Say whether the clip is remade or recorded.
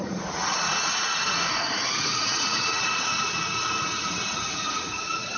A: remade